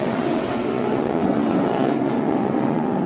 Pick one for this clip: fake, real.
fake